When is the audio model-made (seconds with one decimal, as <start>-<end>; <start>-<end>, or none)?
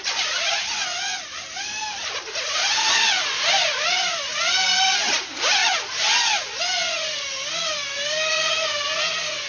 none